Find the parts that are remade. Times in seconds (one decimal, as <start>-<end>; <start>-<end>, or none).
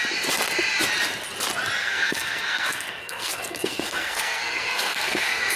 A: 1.8-5.6